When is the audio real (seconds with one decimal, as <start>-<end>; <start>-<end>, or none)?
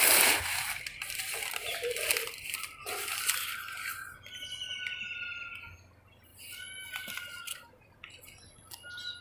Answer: 0.0-9.2